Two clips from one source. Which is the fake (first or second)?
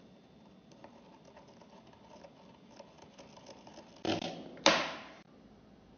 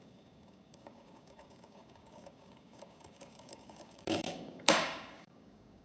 second